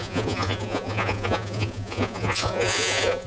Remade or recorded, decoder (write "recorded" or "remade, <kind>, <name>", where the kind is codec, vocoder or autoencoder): remade, vocoder, Vocos